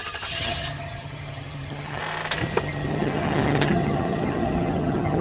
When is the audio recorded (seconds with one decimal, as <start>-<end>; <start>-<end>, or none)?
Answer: 2.0-2.6

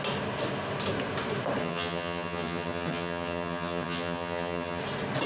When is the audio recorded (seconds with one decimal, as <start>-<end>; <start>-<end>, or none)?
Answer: 0.0-1.6; 4.8-5.3

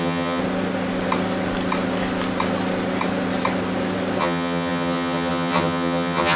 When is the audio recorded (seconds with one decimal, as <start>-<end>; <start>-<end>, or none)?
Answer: 0.4-4.2

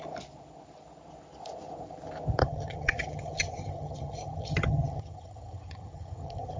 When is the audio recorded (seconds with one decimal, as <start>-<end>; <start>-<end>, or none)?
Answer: 0.0-2.4

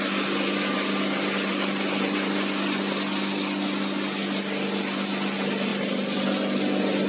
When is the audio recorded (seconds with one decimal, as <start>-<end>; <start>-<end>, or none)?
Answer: 0.0-7.1